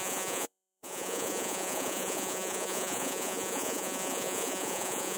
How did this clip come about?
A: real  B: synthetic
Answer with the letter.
B